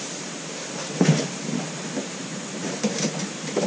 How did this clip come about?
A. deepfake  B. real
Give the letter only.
A